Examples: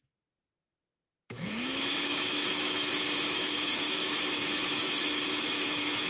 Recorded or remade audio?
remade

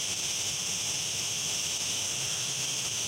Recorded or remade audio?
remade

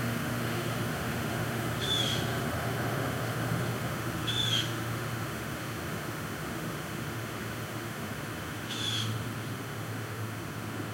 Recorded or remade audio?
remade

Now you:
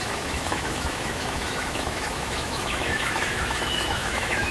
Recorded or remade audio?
remade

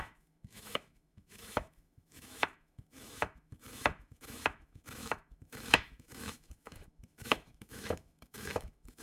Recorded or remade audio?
remade